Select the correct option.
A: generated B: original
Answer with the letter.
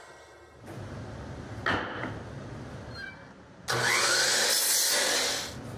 B